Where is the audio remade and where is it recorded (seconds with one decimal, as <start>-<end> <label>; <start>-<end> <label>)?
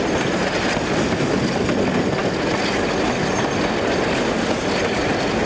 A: 0.0-5.5 recorded